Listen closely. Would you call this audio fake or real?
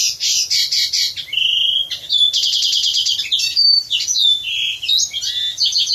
real